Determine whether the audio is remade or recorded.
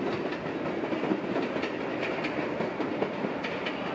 recorded